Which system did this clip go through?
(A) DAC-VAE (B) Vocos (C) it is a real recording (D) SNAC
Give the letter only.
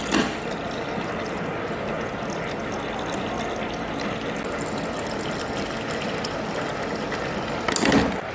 C